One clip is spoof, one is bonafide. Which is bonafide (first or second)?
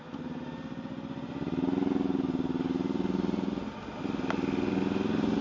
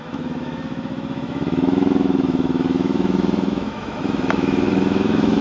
first